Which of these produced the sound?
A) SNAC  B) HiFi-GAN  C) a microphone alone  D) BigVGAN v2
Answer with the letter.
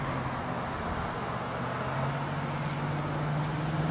C